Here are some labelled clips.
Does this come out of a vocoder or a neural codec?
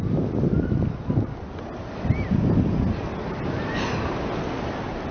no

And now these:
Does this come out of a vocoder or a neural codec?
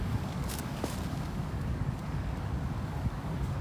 yes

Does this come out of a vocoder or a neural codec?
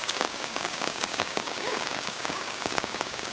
yes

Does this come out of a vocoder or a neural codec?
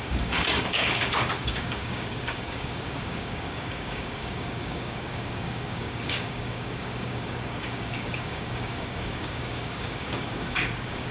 yes